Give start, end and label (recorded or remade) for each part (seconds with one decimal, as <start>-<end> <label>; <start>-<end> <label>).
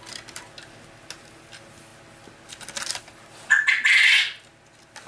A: 0.0-5.1 recorded